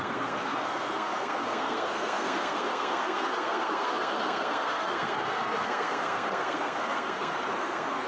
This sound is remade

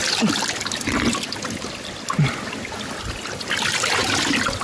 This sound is recorded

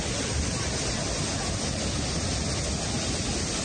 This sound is recorded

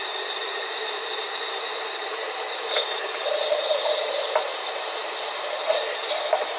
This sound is remade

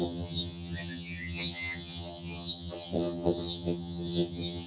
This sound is remade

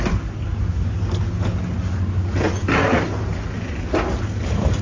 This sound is recorded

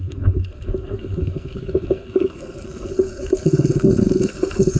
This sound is remade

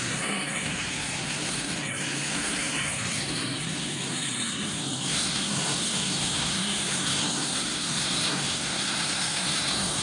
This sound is remade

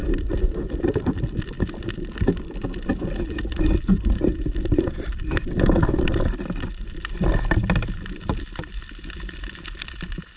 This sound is remade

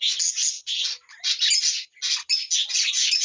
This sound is recorded